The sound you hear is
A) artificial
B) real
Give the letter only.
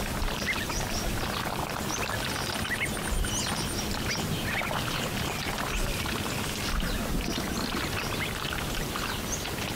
B